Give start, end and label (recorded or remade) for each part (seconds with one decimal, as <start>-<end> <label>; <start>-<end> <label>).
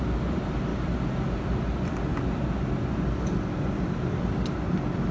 0.0-5.1 recorded